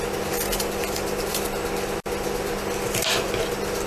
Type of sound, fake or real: real